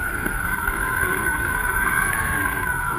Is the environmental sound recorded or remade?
remade